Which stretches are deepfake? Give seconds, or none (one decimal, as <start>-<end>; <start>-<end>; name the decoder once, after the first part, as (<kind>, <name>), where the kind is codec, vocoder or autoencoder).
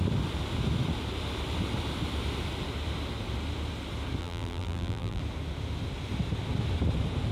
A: 4.2-5.2 (vocoder, BigVGAN v2)